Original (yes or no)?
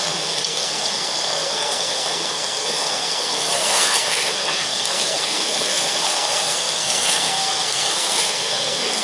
no